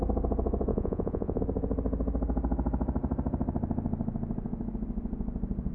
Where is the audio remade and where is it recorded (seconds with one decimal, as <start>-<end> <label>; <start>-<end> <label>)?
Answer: 0.0-0.7 recorded; 0.7-1.4 remade; 1.4-5.7 recorded